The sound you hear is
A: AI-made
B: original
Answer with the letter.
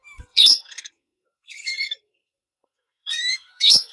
A